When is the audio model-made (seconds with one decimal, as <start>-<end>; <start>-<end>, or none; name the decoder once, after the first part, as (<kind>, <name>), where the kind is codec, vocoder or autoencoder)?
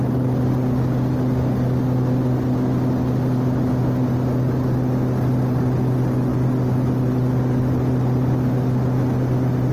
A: none